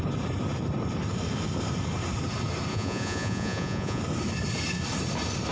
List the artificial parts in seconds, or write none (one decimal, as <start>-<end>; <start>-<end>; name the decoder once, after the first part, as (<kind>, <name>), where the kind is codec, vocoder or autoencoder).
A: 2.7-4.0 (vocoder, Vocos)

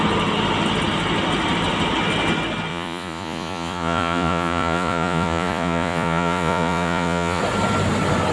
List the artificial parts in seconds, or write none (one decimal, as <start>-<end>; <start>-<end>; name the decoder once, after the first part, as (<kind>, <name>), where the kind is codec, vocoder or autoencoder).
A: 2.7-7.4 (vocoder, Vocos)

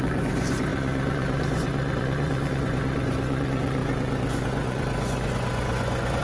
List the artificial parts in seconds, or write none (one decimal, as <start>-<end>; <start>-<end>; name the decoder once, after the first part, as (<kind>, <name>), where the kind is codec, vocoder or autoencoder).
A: 0.0-6.2 (vocoder, Vocos)